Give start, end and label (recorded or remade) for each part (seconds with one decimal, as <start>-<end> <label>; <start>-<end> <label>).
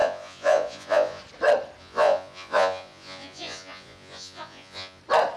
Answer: 0.0-1.2 remade; 1.2-1.8 recorded; 1.8-5.0 remade; 5.0-5.4 recorded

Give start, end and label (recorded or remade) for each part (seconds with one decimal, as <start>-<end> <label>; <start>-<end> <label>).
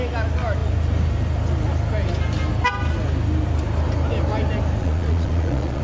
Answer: 0.0-4.8 recorded; 4.8-5.8 remade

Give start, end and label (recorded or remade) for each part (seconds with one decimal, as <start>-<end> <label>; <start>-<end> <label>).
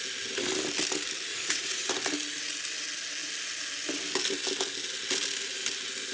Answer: 0.0-1.3 recorded; 1.3-1.9 remade; 1.9-6.1 recorded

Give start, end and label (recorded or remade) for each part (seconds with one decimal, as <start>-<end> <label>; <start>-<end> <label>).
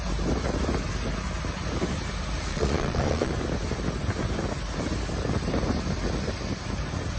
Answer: 0.0-2.5 recorded; 2.5-3.3 remade; 3.3-7.2 recorded